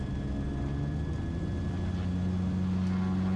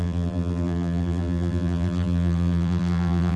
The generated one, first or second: second